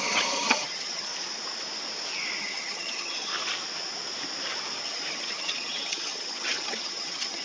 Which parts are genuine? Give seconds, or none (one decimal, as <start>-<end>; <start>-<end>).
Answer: 1.1-2.4; 3.3-4.8